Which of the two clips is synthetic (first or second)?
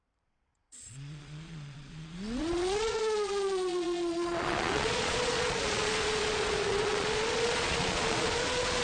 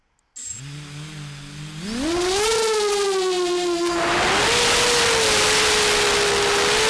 first